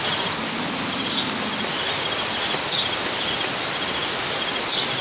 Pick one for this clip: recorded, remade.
recorded